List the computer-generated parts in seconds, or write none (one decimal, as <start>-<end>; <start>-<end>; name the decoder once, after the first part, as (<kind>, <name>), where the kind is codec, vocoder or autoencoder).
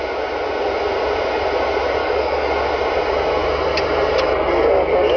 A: 2.0-2.5 (codec, DAC)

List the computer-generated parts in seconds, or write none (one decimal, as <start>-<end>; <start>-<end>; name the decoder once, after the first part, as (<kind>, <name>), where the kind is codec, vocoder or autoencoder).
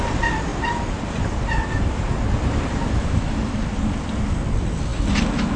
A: 0.5-3.9 (vocoder, BigVGAN v2)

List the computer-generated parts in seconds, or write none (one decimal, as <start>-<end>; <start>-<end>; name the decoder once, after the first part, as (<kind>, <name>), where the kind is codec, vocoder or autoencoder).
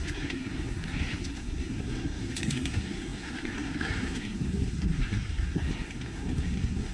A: 0.0-6.9 (codec, SNAC)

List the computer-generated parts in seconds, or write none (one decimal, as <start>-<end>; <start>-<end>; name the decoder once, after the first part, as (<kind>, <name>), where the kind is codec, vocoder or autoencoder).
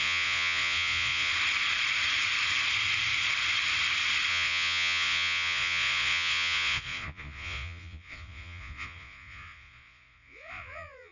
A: 0.0-1.3 (vocoder, Vocos); 4.3-11.1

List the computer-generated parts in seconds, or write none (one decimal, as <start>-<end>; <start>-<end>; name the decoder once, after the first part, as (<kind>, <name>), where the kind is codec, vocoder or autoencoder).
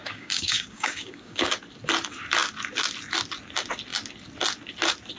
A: 0.0-1.5 (codec, DAC)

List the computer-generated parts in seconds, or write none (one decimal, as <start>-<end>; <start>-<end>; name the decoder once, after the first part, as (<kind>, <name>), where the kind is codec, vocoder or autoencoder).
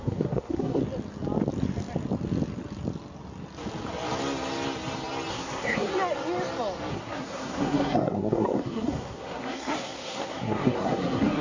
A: 0.0-0.8 (codec, SNAC); 5.3-5.9; 6.9-11.4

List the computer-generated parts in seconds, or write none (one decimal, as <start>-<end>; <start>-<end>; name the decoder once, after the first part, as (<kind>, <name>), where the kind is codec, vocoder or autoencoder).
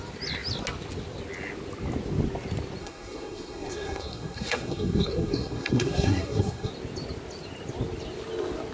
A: 2.8-6.7 (codec, SNAC)